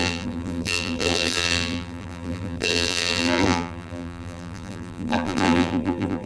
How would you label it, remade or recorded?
remade